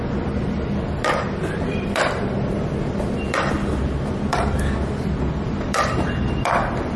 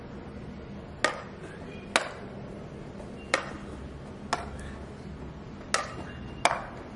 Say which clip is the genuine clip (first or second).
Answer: second